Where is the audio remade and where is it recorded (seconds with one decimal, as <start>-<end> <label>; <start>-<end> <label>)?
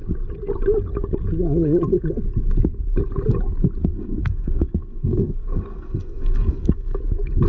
0.0-3.8 recorded; 3.8-7.0 remade; 7.0-7.5 recorded